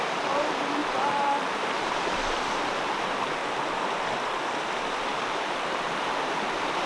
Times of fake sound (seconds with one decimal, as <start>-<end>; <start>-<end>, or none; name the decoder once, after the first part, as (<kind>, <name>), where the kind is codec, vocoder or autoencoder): 0.0-3.4 (vocoder, BigVGAN v2); 5.1-6.9